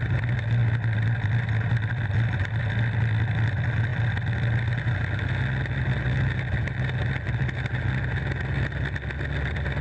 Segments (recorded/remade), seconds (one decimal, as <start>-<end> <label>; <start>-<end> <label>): 0.0-9.8 recorded